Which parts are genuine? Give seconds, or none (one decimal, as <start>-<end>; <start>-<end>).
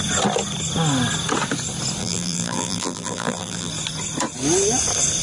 0.0-2.0; 3.7-5.2